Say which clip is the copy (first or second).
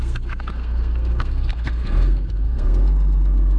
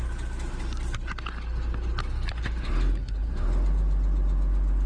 first